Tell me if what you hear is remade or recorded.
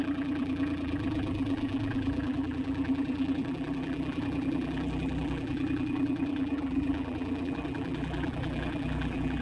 remade